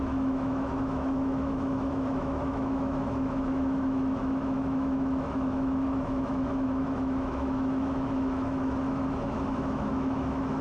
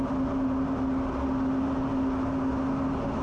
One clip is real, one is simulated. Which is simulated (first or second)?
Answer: first